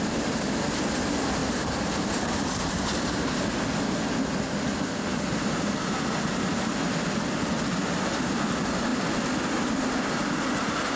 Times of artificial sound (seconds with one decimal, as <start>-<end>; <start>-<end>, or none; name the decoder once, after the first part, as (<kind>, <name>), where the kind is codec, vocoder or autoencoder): 1.4-2.8 (vocoder, BigVGAN v2)